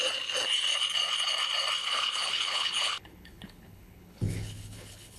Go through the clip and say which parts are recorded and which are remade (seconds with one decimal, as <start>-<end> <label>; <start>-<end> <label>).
0.0-1.8 recorded; 1.8-5.2 remade